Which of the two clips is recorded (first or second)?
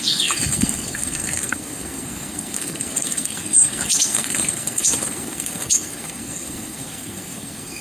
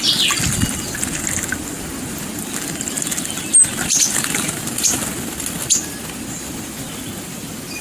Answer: second